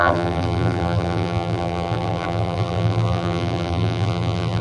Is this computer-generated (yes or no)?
yes